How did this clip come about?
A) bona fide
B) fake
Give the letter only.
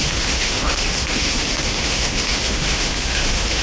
B